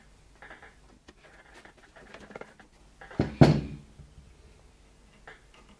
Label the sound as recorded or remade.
recorded